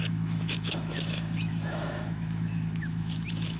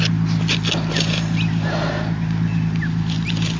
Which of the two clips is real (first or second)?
second